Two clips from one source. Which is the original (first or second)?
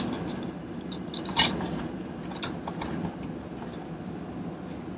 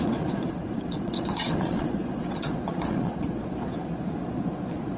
first